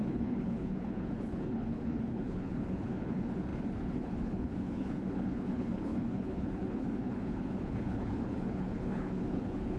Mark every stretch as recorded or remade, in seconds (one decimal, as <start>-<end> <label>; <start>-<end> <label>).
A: 0.0-9.8 remade